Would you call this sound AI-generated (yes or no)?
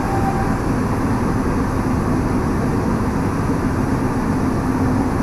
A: no